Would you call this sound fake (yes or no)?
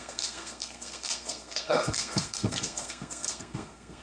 yes